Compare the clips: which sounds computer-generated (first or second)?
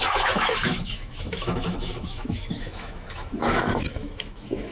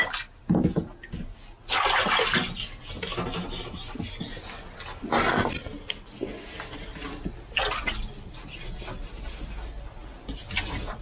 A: first